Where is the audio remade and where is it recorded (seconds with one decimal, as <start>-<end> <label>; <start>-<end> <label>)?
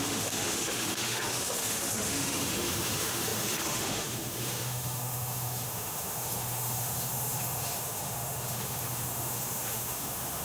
0.0-10.4 remade